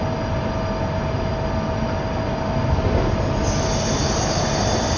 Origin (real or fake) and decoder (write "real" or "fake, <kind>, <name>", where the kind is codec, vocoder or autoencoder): real